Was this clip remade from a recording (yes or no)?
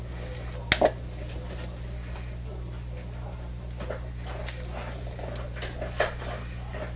no